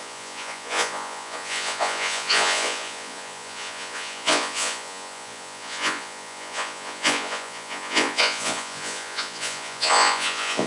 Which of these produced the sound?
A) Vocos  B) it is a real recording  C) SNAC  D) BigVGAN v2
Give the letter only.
A